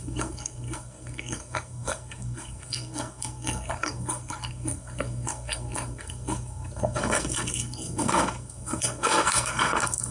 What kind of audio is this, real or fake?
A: fake